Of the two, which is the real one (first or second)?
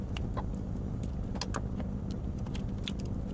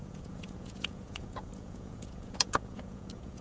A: first